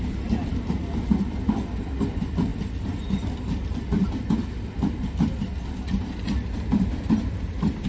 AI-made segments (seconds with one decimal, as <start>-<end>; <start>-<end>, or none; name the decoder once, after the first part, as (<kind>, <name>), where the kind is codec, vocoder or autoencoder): none